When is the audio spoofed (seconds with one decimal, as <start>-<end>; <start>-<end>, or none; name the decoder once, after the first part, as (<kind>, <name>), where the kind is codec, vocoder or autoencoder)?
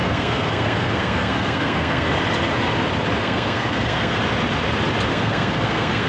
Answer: 0.0-2.1 (codec, SNAC); 3.2-4.2; 5.1-6.1